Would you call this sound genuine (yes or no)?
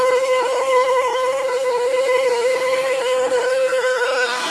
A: no